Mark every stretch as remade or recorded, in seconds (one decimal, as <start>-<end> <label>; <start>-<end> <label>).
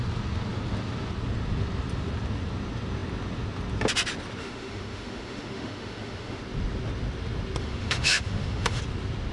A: 0.0-4.4 recorded; 4.4-6.4 remade; 6.4-7.6 recorded; 7.6-8.8 remade; 8.8-9.3 recorded